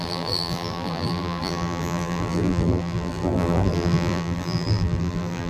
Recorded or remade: remade